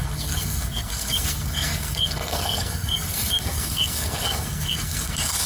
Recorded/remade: remade